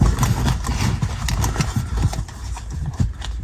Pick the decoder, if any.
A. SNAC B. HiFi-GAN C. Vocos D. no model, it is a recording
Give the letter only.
D